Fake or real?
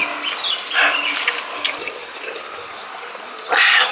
real